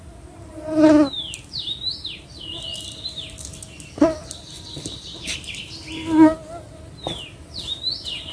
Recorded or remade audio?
recorded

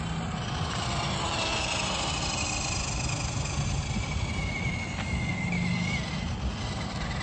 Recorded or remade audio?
recorded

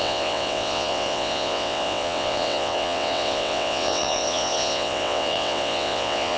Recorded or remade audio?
remade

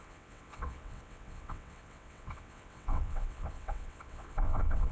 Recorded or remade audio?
remade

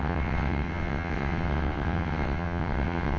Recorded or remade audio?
remade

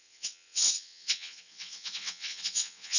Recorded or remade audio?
remade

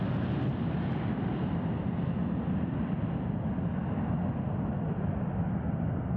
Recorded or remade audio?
recorded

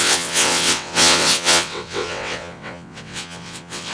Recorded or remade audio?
remade